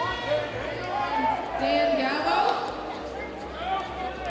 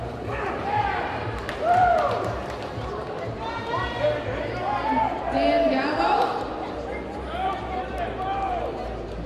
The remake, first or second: second